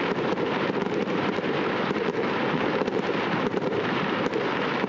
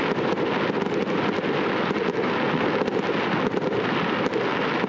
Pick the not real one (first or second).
first